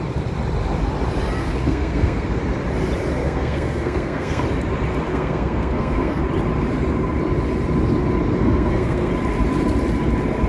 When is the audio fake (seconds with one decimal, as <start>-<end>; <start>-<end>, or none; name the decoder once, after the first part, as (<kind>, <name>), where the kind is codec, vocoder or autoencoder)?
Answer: 1.4-2.4 (codec, SNAC); 3.2-4.4; 5.1-6.2; 8.4-9.1